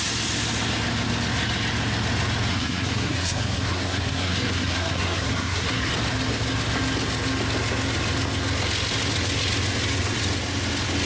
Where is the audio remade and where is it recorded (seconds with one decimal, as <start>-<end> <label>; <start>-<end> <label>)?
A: 0.0-2.5 recorded; 2.5-5.9 remade; 5.9-11.1 recorded